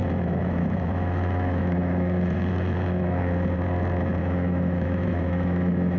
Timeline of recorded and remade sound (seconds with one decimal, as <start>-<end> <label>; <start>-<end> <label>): 0.0-3.2 remade; 3.2-4.2 recorded; 4.2-6.0 remade

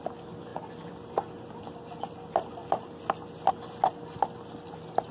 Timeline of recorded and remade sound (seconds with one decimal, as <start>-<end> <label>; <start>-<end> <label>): 0.0-5.1 recorded

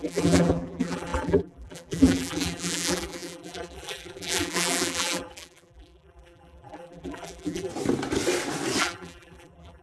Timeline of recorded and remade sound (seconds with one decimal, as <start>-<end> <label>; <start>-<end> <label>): 0.0-7.7 remade; 7.7-8.8 recorded; 8.8-9.8 remade

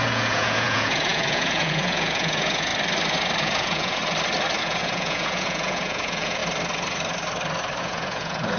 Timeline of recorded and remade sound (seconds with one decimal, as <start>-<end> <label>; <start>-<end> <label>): 0.0-2.7 remade; 2.7-3.4 recorded; 3.4-4.0 remade; 4.0-4.6 recorded; 4.6-6.4 remade; 6.4-7.8 recorded; 7.8-8.6 remade